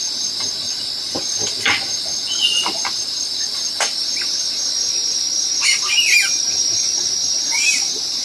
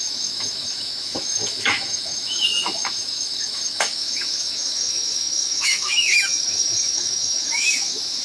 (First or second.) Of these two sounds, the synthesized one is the second